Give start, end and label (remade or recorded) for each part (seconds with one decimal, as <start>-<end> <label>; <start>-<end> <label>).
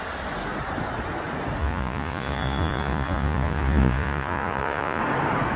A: 0.0-1.6 recorded; 1.6-5.0 remade; 5.0-5.6 recorded